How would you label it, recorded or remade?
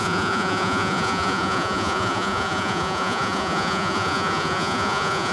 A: remade